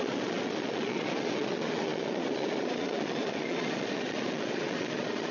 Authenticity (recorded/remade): remade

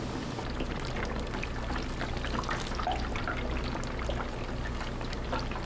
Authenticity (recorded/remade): recorded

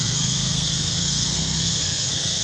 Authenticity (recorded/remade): remade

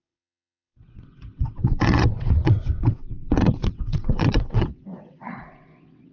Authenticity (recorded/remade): remade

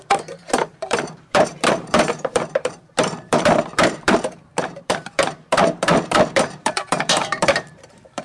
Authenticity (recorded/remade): remade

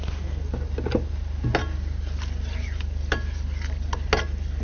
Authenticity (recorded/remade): recorded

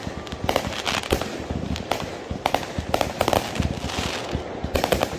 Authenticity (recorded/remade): recorded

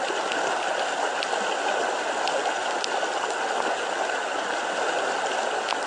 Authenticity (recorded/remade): recorded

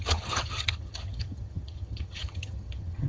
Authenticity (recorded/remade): remade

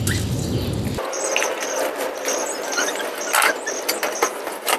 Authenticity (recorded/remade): recorded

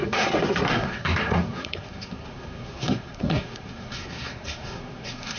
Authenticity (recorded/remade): remade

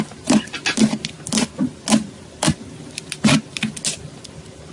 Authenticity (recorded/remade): recorded